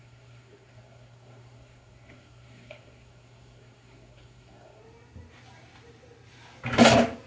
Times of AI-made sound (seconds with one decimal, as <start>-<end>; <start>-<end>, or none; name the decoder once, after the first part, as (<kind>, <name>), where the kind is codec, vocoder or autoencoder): 0.0-4.8 (codec, SNAC)